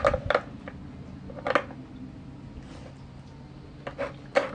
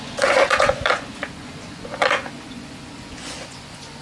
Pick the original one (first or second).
first